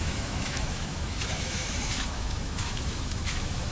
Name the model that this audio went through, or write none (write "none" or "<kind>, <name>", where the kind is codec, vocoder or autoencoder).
autoencoder, DAC-VAE